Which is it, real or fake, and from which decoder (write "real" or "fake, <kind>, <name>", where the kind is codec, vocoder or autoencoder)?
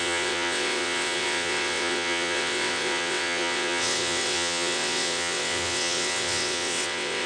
fake, vocoder, WaveNeXt